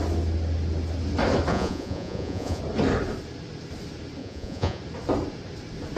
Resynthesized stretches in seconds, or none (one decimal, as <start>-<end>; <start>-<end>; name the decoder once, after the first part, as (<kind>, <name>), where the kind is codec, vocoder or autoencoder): 1.5-2.6 (vocoder, Vocos); 4.2-4.8